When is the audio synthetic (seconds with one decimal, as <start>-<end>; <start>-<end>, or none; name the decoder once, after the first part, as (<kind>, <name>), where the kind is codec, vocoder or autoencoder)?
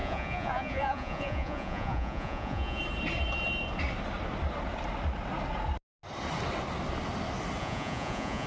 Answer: 0.0-2.8 (vocoder, Vocos); 7.6-8.5